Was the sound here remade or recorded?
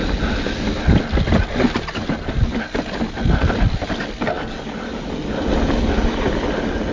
recorded